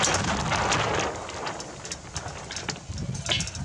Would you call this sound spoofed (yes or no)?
no